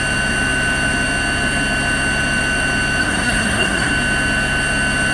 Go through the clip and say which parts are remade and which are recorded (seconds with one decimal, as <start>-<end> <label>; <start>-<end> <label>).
0.0-3.0 recorded; 3.0-3.9 remade; 3.9-5.1 recorded